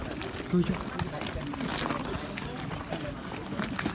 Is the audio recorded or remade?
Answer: recorded